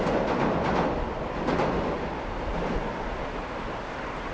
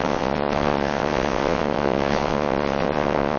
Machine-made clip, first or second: second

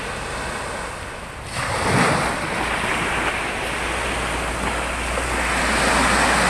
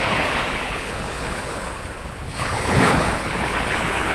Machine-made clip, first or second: second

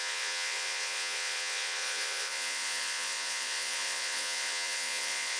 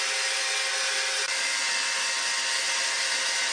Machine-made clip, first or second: first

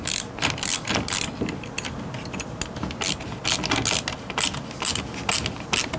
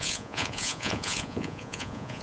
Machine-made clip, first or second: second